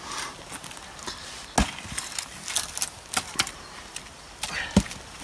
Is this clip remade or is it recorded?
recorded